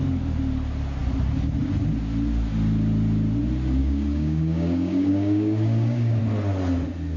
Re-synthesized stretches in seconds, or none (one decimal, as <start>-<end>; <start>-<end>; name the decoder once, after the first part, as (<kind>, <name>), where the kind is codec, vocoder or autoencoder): 3.8-6.2 (codec, DAC)